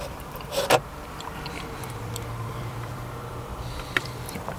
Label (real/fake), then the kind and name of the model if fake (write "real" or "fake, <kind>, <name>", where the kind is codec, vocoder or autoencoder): fake, vocoder, BigVGAN v2